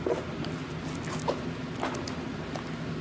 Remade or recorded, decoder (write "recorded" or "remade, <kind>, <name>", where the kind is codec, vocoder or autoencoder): recorded